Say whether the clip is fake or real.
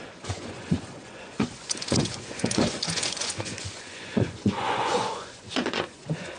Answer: fake